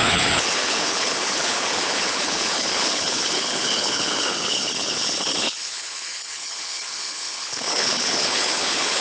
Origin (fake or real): fake